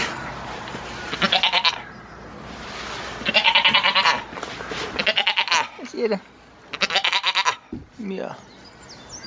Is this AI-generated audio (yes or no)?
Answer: no